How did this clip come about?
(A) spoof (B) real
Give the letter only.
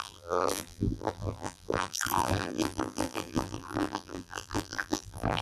A